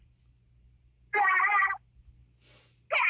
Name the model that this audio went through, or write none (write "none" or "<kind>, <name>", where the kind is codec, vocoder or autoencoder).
none